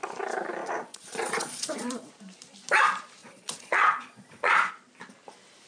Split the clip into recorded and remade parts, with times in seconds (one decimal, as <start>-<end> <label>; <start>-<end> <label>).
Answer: 0.0-0.6 recorded; 0.6-2.1 remade; 2.1-3.2 recorded; 3.2-4.7 remade; 4.7-5.7 recorded